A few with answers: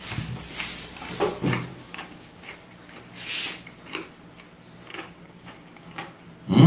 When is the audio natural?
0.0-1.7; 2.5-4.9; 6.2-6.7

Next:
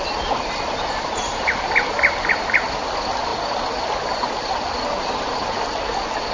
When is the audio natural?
0.0-6.3

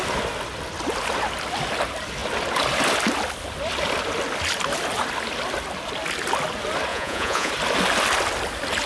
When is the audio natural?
0.0-6.9; 7.5-8.9

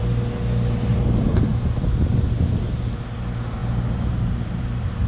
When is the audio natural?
0.0-5.1